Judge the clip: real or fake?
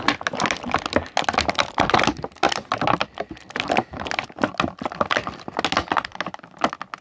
real